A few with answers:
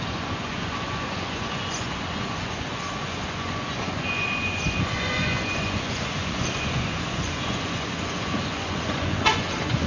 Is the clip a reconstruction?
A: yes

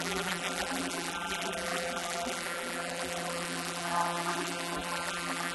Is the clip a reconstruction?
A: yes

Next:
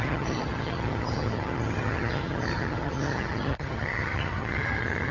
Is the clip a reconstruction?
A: yes